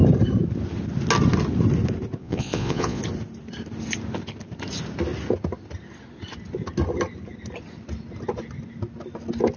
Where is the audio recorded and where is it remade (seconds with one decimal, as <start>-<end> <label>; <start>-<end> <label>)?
0.0-2.2 recorded; 2.2-3.0 remade; 3.0-9.6 recorded